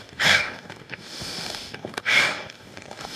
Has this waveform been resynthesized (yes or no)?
yes